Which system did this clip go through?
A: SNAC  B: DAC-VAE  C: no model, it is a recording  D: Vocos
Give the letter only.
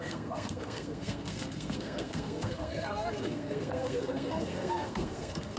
A